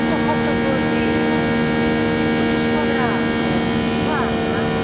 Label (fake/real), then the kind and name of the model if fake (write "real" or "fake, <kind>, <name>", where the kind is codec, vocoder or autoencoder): real